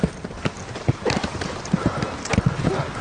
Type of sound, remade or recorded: recorded